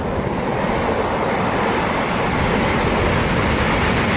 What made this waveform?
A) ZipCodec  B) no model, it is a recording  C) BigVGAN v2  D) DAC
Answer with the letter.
B